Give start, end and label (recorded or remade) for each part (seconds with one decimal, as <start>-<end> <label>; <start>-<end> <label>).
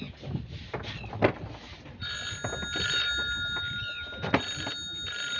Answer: 0.0-5.4 recorded